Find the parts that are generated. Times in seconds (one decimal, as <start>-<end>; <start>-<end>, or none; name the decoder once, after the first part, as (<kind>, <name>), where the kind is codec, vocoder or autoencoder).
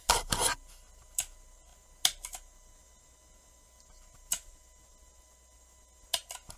none